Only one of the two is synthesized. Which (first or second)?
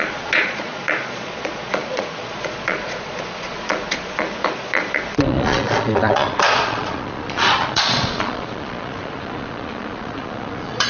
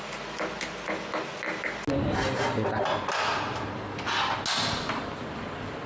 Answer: first